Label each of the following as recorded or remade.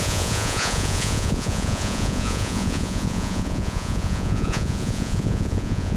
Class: remade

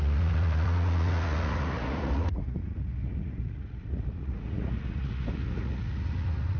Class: remade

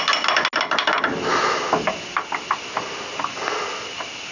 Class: recorded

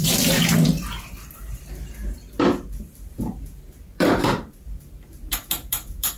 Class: remade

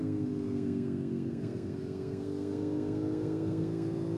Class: remade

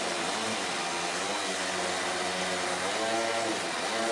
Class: recorded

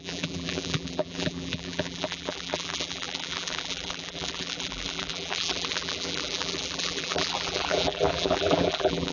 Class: remade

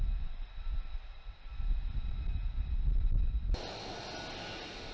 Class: recorded